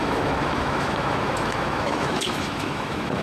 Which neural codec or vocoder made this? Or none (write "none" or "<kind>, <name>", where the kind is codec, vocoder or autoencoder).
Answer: autoencoder, DAC-VAE